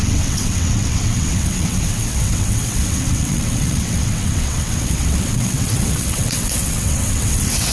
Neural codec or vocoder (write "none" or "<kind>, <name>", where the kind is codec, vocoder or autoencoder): vocoder, WaveNeXt